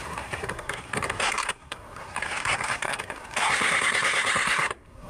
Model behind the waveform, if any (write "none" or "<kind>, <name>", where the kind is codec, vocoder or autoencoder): codec, SNAC